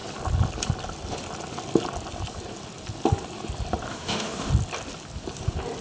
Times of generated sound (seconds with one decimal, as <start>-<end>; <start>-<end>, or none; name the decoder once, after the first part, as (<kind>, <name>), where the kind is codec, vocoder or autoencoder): 3.9-4.5 (autoencoder, DAC-VAE)